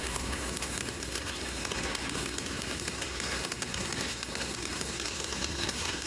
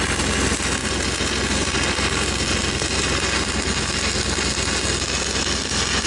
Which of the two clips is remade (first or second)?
first